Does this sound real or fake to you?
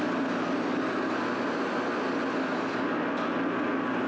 real